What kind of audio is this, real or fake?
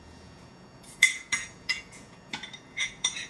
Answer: fake